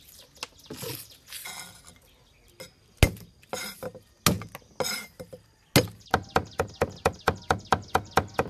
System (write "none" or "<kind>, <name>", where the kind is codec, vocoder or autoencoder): none